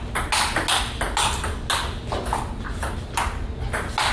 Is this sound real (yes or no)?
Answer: yes